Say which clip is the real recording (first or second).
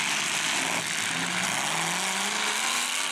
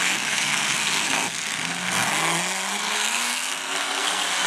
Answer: first